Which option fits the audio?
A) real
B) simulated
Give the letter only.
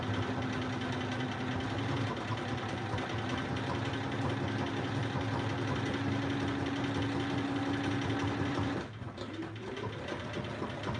A